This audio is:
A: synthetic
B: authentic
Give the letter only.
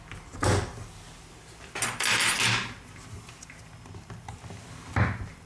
B